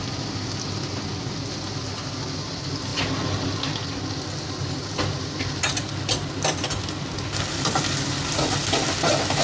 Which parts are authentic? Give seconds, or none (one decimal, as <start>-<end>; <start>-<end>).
0.0-9.4